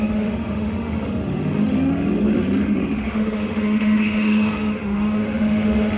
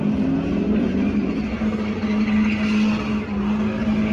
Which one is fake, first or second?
first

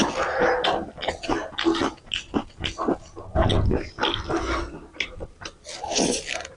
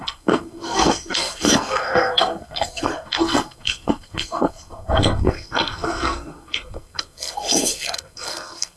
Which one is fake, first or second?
second